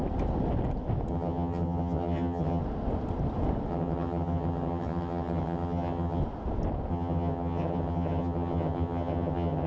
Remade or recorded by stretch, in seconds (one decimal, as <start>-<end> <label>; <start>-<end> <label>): 0.0-1.1 recorded; 1.1-2.6 remade; 2.6-3.7 recorded; 3.7-6.2 remade; 6.2-6.9 recorded; 6.9-9.7 remade